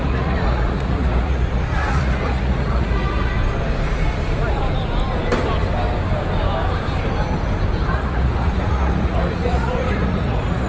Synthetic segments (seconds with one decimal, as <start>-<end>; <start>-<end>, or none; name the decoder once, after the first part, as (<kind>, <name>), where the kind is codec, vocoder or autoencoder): 0.0-3.4 (vocoder, Vocos); 7.9-10.7

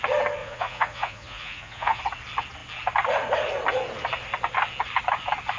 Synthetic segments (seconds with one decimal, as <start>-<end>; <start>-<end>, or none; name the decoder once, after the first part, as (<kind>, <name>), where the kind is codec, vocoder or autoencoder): 0.4-2.0 (vocoder, Vocos)

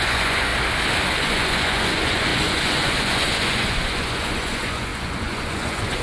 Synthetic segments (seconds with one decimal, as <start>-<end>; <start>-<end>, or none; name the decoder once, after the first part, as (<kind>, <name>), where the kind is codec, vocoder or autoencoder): 0.0-0.5 (vocoder, Vocos); 1.2-6.0

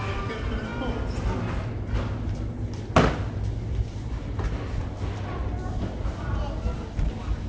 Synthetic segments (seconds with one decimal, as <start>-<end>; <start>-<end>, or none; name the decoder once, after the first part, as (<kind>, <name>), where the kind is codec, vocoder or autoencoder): none

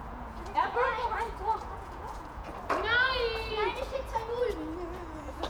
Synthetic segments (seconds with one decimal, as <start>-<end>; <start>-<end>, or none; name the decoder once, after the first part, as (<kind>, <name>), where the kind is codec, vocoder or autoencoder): 0.0-2.5 (vocoder, Vocos); 3.5-4.4; 4.9-5.5

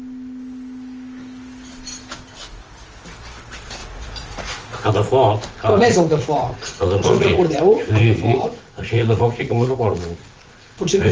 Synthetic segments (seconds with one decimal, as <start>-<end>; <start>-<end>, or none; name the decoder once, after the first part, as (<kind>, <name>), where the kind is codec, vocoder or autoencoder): 3.8-4.9 (vocoder, Vocos); 5.7-11.1